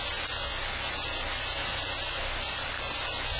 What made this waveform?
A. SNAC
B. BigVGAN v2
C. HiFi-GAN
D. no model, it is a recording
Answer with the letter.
D